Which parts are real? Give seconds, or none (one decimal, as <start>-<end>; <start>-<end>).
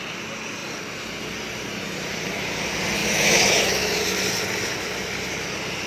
0.0-3.0; 4.0-5.9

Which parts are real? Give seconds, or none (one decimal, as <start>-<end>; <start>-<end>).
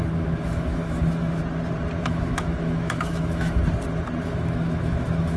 1.4-2.0; 3.6-4.2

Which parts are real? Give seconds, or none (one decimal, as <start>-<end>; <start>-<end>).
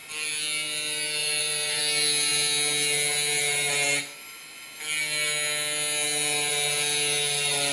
0.0-1.2; 1.8-7.7